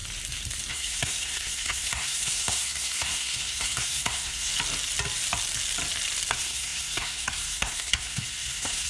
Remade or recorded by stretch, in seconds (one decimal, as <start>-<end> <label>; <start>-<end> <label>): 0.0-0.7 recorded; 0.7-4.5 remade; 4.5-6.3 recorded; 6.3-8.9 remade